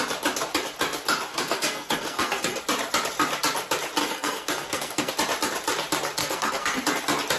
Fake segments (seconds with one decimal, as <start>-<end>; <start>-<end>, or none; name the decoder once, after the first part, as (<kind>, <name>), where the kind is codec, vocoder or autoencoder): 1.3-2.6 (codec, SNAC); 4.0-5.1; 6.2-6.8